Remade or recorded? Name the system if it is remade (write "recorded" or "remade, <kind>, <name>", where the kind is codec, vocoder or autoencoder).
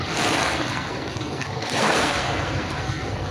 remade, codec, SNAC